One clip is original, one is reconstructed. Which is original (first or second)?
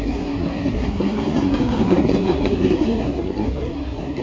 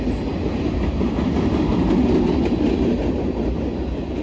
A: second